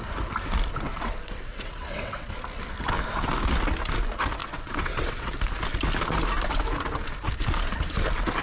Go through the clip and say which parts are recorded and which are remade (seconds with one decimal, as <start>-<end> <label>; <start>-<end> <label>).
0.0-0.9 recorded; 0.9-2.3 remade; 2.3-4.4 recorded; 4.4-5.3 remade; 5.3-8.4 recorded

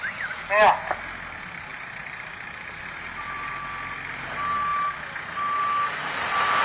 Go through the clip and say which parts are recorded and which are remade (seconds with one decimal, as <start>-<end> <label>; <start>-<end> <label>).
0.0-1.7 recorded; 1.7-3.5 remade; 3.5-6.6 recorded

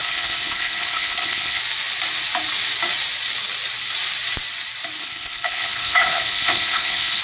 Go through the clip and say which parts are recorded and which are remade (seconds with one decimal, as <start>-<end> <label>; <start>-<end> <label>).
0.0-1.6 remade; 1.6-5.0 recorded; 5.0-7.2 remade

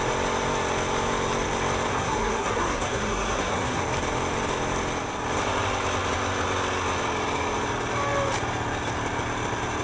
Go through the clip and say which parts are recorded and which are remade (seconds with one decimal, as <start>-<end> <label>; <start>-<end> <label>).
0.0-1.9 recorded; 1.9-3.8 remade; 3.8-9.8 recorded

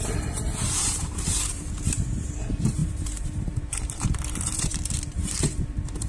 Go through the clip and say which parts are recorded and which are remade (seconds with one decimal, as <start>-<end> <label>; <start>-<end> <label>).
0.0-6.1 remade